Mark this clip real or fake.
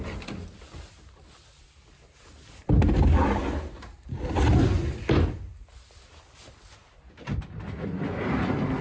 real